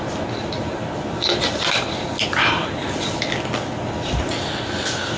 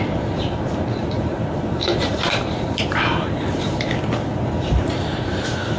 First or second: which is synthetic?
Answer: second